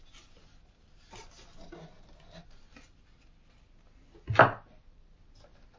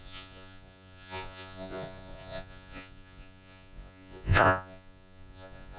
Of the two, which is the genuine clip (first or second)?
first